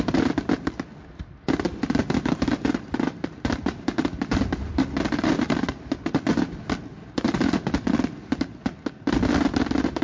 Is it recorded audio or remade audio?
recorded